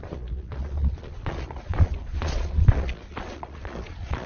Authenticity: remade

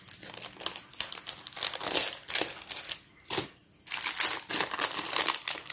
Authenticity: recorded